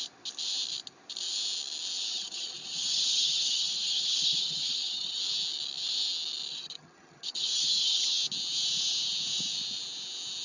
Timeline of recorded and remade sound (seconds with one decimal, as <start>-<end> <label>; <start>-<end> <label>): 0.0-2.1 recorded; 2.1-5.2 remade; 5.2-6.5 recorded; 6.5-8.2 remade; 8.2-10.4 recorded